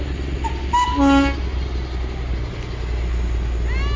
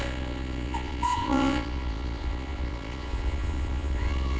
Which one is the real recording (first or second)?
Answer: first